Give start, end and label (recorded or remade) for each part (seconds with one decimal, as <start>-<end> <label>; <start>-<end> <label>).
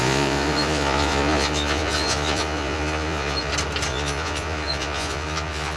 0.0-3.5 remade; 3.5-3.9 recorded; 3.9-5.8 remade